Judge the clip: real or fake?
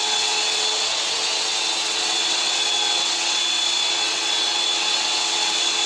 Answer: fake